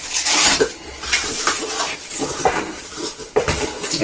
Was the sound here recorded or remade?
remade